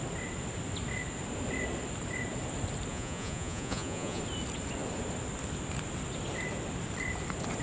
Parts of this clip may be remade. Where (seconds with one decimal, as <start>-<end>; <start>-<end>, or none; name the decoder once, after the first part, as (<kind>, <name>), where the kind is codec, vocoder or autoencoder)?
2.9-4.2 (vocoder, Vocos)